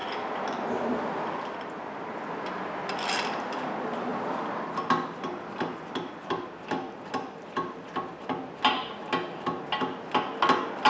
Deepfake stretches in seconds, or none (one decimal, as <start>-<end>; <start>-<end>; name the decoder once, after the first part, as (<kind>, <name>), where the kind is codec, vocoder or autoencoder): none